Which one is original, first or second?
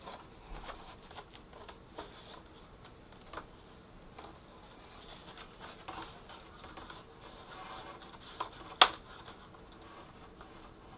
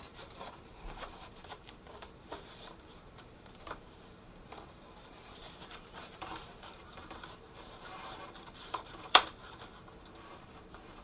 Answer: first